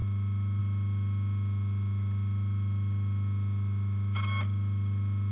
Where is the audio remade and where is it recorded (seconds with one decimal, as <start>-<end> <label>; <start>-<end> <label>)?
0.0-5.3 recorded